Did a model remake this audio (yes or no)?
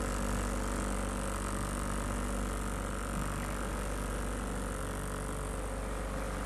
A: no